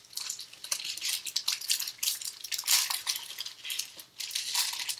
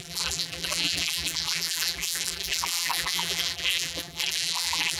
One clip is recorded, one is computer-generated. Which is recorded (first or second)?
first